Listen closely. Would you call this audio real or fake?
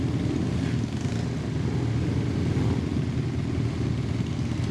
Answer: real